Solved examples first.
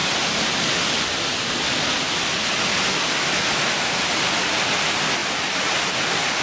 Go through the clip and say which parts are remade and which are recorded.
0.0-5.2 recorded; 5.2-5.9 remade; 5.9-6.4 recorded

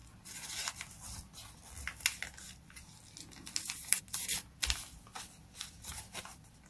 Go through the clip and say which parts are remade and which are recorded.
0.0-6.7 recorded

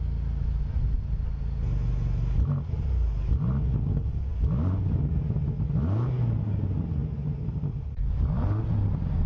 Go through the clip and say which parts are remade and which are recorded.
0.0-9.3 recorded

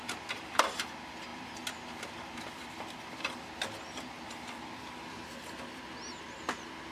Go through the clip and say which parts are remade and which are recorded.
0.0-6.9 recorded

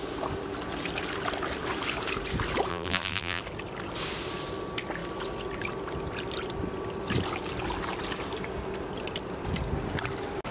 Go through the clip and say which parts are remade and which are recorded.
0.0-2.7 recorded; 2.7-3.4 remade; 3.4-10.5 recorded

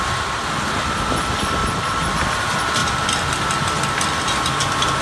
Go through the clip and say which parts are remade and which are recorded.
0.0-1.6 recorded; 1.6-2.3 remade; 2.3-5.0 recorded

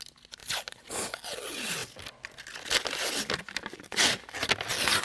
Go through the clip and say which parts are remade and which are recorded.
0.0-5.0 recorded